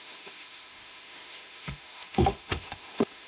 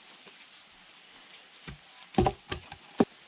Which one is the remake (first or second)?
first